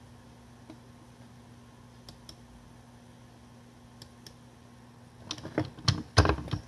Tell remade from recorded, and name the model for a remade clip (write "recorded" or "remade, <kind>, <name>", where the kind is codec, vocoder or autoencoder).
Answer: recorded